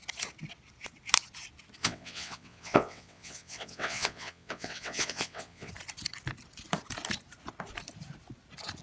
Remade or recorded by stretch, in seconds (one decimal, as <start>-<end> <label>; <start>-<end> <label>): 0.0-1.8 recorded; 1.8-5.7 remade; 5.7-8.8 recorded